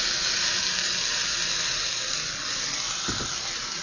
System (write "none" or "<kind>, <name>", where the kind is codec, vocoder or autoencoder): none